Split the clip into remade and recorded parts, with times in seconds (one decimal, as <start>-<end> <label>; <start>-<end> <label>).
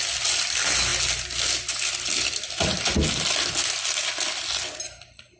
0.0-5.4 recorded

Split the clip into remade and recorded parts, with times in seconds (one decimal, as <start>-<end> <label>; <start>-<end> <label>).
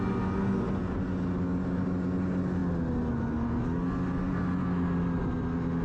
0.0-5.8 recorded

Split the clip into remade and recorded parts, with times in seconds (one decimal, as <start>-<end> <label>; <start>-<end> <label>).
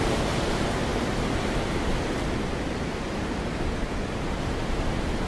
0.0-5.3 recorded